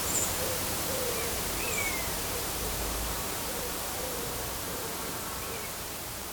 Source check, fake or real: fake